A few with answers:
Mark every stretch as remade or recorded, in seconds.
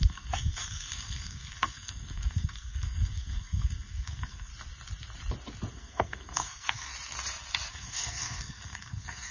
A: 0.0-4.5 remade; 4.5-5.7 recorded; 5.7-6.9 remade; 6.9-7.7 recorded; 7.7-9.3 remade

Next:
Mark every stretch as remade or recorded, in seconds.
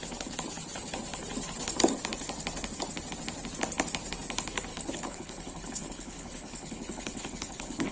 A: 0.0-4.7 recorded; 4.7-7.9 remade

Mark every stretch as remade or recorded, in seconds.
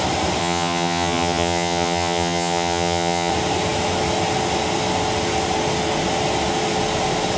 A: 0.0-0.4 recorded; 0.4-3.3 remade; 3.3-7.4 recorded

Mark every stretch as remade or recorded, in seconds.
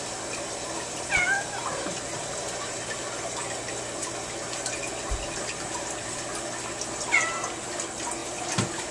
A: 0.0-8.9 recorded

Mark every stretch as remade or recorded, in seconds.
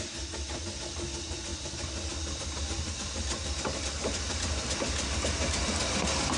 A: 0.0-6.4 recorded